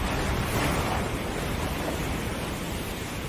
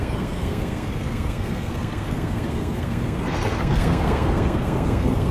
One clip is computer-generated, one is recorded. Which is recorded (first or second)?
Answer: first